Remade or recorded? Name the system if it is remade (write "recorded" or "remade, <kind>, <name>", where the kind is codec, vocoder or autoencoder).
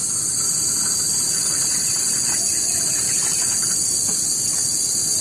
recorded